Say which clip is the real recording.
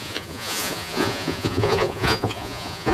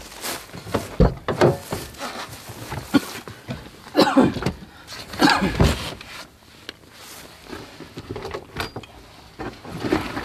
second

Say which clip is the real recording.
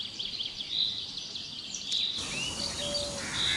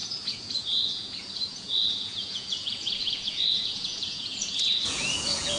first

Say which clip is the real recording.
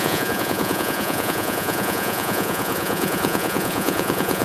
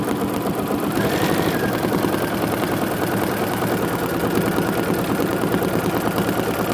second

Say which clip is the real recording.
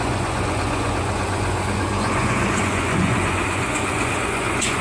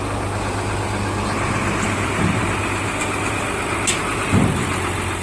second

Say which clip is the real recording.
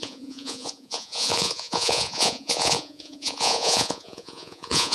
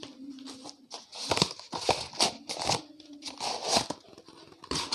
second